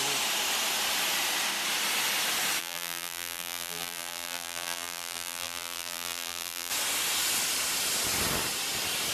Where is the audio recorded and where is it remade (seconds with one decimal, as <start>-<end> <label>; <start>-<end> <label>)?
0.0-2.6 recorded; 2.6-6.7 remade; 6.7-9.1 recorded